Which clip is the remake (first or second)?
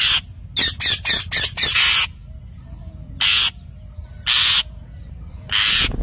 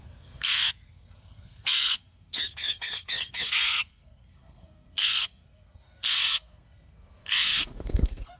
second